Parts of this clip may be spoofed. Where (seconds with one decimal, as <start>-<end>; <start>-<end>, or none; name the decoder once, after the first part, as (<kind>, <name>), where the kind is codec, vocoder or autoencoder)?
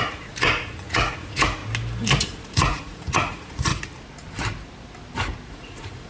0.0-1.6 (vocoder, Vocos); 2.2-3.7; 5.5-6.1